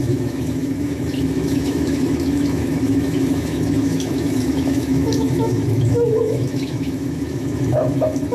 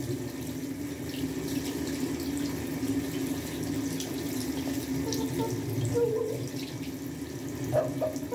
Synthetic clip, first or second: first